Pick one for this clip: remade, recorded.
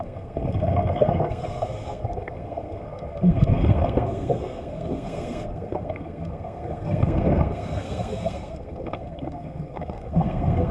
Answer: remade